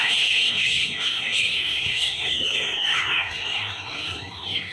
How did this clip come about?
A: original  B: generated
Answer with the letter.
B